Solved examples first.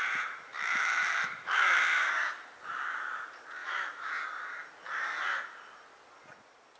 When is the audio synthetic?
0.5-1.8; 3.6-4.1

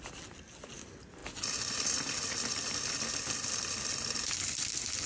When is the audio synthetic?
none

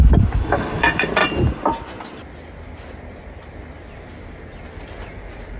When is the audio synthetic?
none

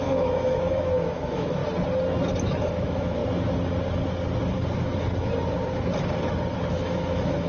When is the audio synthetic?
0.0-1.6; 2.6-3.2; 6.7-7.5